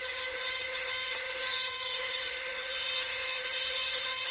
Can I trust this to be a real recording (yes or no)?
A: no